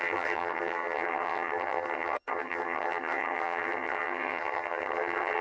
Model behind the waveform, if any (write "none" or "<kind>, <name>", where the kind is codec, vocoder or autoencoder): vocoder, HiFi-GAN